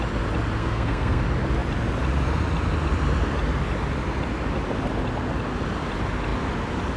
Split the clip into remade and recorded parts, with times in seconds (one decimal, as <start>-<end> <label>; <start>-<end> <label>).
0.0-0.6 recorded; 0.6-1.2 remade; 1.2-7.0 recorded